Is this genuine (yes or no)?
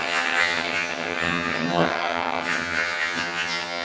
no